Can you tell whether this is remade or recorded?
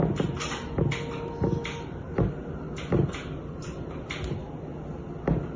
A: recorded